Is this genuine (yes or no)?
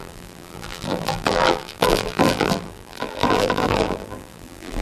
no